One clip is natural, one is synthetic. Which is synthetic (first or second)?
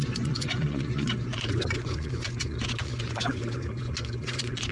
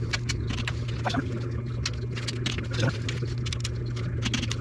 first